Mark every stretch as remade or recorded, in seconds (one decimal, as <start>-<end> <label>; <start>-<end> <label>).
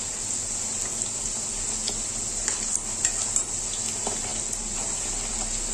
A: 0.0-5.7 recorded